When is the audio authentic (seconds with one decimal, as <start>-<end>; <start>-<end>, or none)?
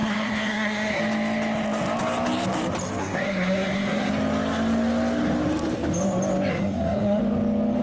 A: 1.0-3.0; 4.1-6.5; 7.2-7.8